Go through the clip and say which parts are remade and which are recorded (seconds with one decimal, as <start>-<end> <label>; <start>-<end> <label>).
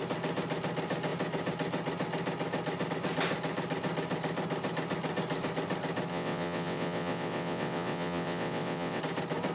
0.0-6.1 recorded; 6.1-9.0 remade; 9.0-9.5 recorded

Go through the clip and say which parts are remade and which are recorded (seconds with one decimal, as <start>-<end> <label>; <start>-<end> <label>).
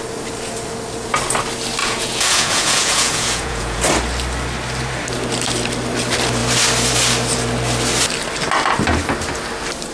0.0-1.8 recorded; 1.8-3.8 remade; 3.8-9.9 recorded